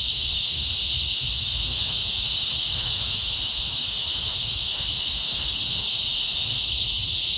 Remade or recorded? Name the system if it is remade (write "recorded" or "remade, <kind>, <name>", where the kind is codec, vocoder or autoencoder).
remade, autoencoder, DAC-VAE